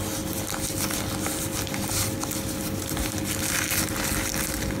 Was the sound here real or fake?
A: real